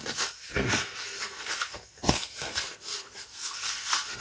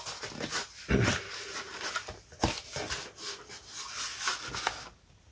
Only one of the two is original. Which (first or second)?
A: second